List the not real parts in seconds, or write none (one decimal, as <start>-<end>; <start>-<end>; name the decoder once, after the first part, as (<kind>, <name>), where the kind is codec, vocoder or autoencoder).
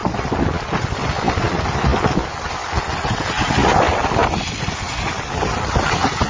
none